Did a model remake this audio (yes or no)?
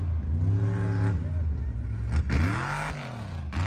no